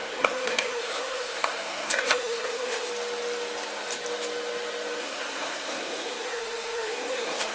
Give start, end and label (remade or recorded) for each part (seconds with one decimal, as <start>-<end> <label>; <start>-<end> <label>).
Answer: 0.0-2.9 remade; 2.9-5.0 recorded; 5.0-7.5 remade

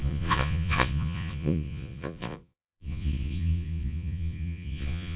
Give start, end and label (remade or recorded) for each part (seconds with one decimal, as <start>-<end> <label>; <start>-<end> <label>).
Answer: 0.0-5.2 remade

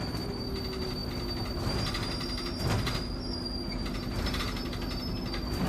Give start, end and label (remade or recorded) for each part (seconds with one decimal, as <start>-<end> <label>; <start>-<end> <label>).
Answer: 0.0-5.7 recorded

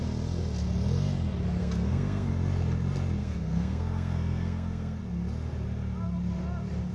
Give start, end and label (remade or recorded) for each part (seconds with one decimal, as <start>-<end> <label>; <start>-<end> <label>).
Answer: 0.0-1.6 recorded; 1.6-2.3 remade; 2.3-3.2 recorded; 3.2-5.0 remade; 5.0-6.9 recorded